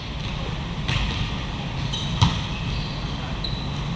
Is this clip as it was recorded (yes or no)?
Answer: yes